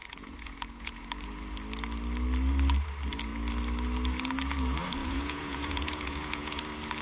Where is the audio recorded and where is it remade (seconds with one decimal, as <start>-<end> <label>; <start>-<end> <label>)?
0.0-1.0 remade; 1.0-5.0 recorded; 5.0-6.6 remade; 6.6-7.0 recorded